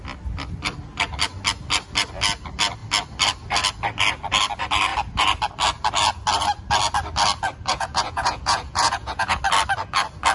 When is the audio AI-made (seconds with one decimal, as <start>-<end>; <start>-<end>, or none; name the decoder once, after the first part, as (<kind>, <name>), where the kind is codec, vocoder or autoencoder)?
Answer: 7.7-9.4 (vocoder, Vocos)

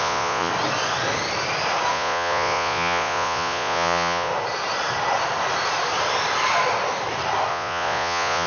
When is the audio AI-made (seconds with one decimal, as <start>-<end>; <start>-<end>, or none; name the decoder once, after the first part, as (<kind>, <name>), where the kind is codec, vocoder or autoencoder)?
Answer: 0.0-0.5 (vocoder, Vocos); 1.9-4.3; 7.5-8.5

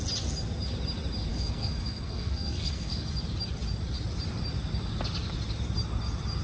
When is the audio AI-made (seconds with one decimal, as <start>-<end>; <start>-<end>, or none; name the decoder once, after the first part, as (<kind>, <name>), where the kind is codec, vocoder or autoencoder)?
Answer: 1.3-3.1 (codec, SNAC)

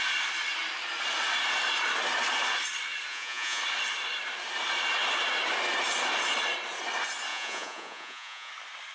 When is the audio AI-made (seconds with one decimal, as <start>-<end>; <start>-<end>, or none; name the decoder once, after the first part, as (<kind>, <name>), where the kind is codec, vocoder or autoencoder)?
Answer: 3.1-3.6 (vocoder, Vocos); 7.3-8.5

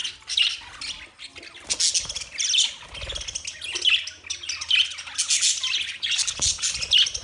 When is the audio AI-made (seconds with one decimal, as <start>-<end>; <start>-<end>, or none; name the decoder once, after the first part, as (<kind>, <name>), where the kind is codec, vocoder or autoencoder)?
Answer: none